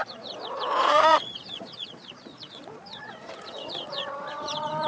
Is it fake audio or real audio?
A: fake